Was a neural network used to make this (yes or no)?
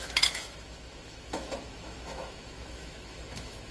yes